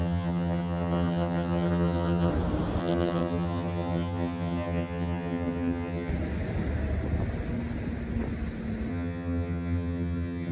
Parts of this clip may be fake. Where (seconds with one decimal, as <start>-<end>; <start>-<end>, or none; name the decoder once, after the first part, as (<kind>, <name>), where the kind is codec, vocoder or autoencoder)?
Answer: 0.0-2.3 (vocoder, HiFi-GAN); 2.8-6.1; 8.9-10.5